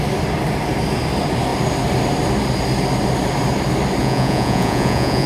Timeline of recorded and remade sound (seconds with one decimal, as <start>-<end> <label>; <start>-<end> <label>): 0.0-4.0 recorded; 4.0-5.3 remade